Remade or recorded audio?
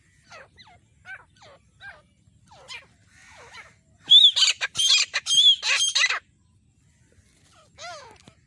recorded